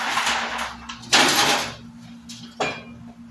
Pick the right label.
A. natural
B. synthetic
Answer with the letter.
A